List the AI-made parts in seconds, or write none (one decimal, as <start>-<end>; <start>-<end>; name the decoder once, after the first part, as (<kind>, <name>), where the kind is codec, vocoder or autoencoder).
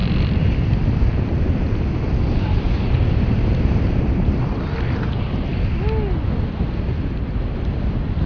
0.0-1.3 (vocoder, BigVGAN v2)